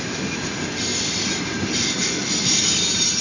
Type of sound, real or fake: real